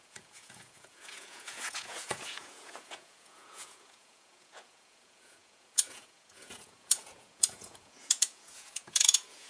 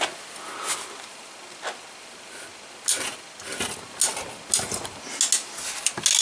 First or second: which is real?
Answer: second